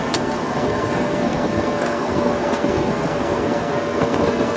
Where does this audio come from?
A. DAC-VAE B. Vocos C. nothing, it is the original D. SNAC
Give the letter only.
D